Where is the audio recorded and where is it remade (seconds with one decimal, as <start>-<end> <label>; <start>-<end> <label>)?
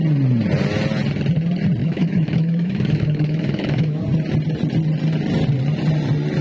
0.0-1.8 recorded; 1.8-4.0 remade; 4.0-6.4 recorded